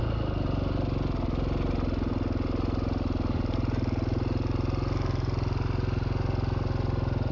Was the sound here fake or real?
real